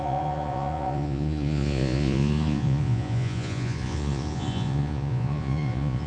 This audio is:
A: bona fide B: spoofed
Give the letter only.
B